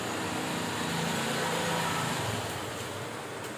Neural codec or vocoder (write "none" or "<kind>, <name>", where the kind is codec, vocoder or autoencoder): none